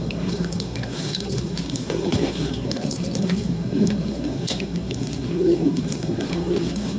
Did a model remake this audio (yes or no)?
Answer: yes